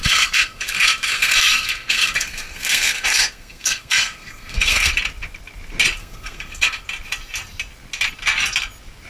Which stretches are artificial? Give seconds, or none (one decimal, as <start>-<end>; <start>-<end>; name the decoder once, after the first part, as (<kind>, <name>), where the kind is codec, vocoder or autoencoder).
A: 0.0-4.9 (codec, SNAC); 6.0-6.8